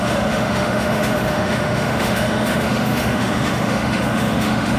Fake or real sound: fake